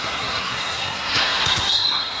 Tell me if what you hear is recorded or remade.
remade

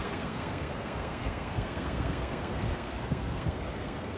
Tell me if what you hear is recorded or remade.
remade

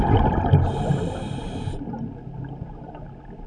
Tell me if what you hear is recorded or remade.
recorded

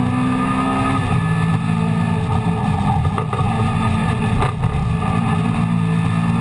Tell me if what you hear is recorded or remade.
recorded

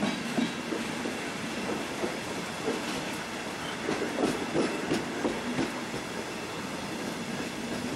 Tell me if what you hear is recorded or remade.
recorded